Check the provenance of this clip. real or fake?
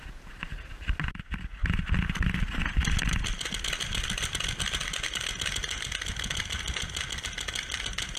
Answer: real